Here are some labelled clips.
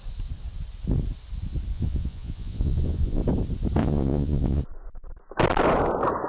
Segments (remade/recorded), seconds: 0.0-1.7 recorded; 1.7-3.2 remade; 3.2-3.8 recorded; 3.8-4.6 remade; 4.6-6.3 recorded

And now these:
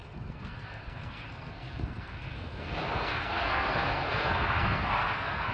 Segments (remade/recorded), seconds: 0.0-5.5 remade

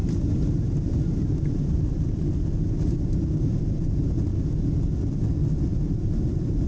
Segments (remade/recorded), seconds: 0.0-3.6 remade; 3.6-5.7 recorded; 5.7-6.7 remade

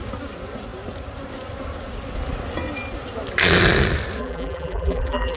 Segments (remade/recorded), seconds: 0.0-4.2 recorded; 4.2-5.4 remade

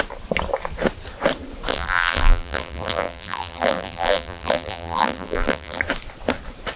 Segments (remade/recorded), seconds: 0.0-1.7 recorded; 1.7-5.8 remade; 5.8-6.8 recorded

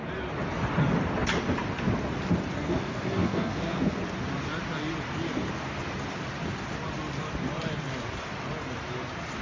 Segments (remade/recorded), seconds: 0.0-2.6 recorded; 2.6-4.0 remade; 4.0-9.4 recorded

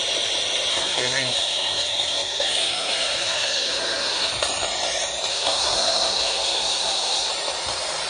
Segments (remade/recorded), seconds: 0.0-0.7 recorded; 0.7-4.3 remade; 4.3-5.3 recorded; 5.3-7.3 remade; 7.3-8.1 recorded